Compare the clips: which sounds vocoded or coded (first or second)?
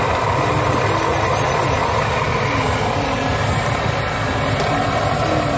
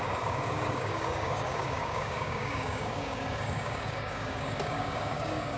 second